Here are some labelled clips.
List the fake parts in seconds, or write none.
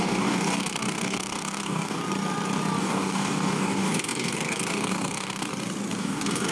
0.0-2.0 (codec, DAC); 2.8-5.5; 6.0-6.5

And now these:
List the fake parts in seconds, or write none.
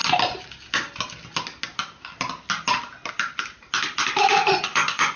4.3-5.2 (vocoder, Vocos)